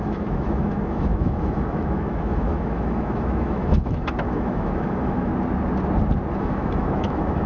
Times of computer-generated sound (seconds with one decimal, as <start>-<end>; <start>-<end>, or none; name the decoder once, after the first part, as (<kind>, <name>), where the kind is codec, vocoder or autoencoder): 0.0-5.3 (autoencoder, DAC-VAE); 6.4-7.5